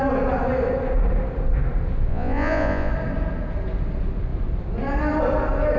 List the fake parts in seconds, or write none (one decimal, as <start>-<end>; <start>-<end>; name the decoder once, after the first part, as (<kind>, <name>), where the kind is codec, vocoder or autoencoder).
2.1-2.9 (vocoder, Vocos)